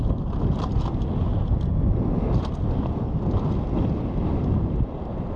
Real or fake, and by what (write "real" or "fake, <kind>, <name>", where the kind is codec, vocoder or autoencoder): real